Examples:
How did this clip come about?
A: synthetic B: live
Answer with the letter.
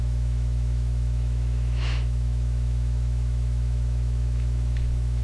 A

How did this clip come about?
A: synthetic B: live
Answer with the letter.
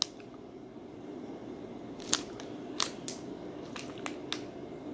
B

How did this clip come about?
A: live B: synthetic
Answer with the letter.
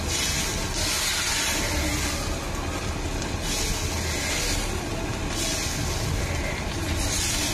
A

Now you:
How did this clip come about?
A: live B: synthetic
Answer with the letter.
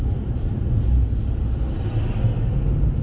A